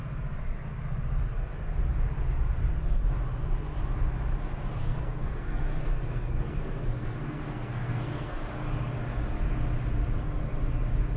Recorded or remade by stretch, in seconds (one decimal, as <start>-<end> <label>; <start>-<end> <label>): 0.0-4.8 recorded; 4.8-8.4 remade; 8.4-11.2 recorded